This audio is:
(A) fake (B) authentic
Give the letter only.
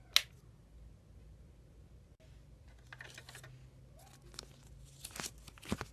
B